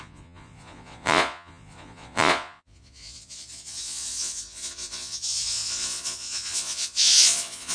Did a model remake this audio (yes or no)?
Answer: yes